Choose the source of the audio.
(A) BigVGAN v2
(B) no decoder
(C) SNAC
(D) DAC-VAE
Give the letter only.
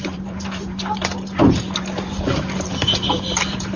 A